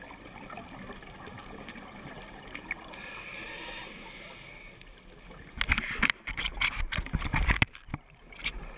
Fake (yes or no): no